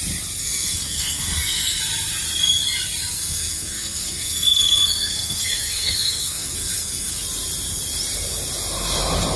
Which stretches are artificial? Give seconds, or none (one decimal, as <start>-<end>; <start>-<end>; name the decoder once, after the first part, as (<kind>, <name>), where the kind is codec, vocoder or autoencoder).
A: 0.4-1.8 (codec, SNAC); 3.1-7.2